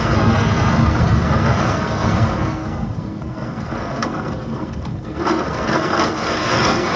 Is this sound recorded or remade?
remade